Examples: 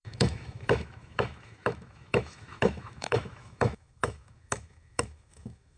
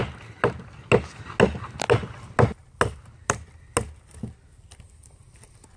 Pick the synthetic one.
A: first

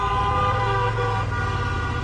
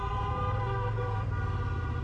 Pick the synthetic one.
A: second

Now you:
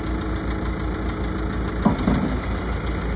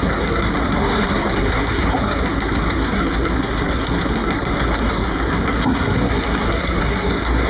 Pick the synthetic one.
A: second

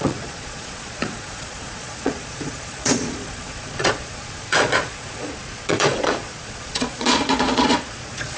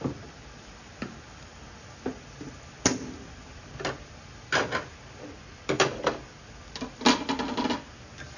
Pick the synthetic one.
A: first